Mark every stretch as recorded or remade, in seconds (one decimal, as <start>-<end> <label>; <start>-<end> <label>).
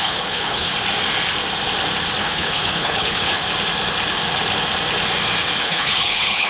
0.0-0.7 remade; 0.7-2.2 recorded; 2.2-3.4 remade; 3.4-5.6 recorded; 5.6-6.5 remade